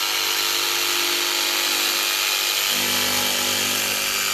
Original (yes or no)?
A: yes